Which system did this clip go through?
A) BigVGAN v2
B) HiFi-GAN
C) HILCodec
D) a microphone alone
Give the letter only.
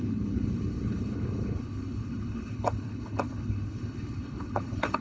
C